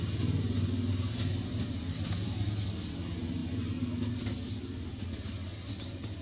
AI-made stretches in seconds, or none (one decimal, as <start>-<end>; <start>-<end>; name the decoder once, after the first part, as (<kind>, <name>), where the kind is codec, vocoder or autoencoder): none

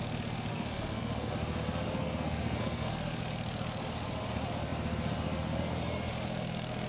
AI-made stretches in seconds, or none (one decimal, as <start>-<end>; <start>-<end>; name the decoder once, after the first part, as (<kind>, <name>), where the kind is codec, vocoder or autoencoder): 0.5-1.3 (codec, SNAC); 2.0-3.2

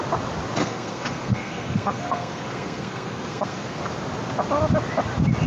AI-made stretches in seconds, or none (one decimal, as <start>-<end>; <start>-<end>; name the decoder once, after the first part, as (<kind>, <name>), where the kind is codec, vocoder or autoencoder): 0.6-3.8 (codec, SNAC)